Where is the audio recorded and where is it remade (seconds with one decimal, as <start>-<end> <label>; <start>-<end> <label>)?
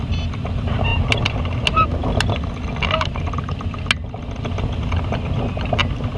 0.0-6.2 recorded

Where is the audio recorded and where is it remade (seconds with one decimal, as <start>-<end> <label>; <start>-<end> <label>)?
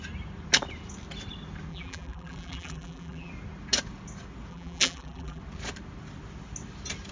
0.0-1.7 recorded; 1.7-3.3 remade; 3.3-4.5 recorded; 4.5-5.4 remade; 5.4-7.1 recorded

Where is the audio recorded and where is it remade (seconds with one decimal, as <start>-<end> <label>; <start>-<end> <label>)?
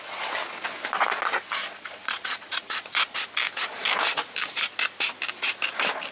0.0-1.6 recorded; 1.6-3.3 remade; 3.3-6.1 recorded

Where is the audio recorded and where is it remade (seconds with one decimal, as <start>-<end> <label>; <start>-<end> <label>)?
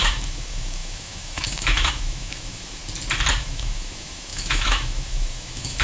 0.0-2.8 remade; 2.8-3.4 recorded; 3.4-5.8 remade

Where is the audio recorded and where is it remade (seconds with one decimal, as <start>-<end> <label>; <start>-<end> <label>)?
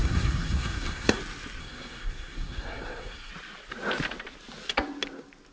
0.0-1.2 remade; 1.2-1.6 recorded; 1.6-3.3 remade; 3.3-5.5 recorded